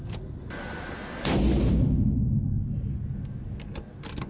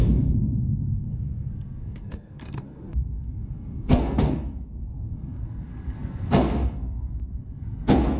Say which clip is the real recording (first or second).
first